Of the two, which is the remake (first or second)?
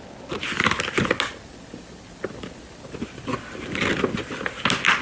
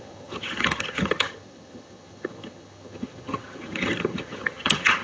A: second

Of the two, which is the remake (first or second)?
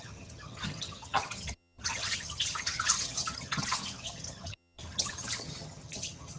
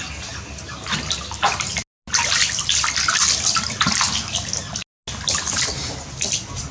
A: first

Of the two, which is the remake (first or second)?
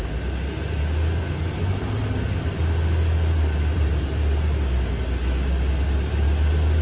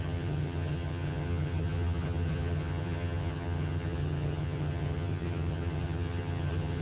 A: second